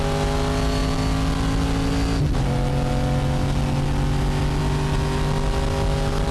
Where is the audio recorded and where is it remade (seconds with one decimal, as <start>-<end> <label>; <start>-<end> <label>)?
0.0-6.3 recorded